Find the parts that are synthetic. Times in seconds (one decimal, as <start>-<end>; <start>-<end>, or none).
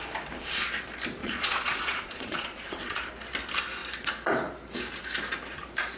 1.2-3.0